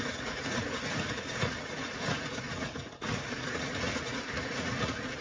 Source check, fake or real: fake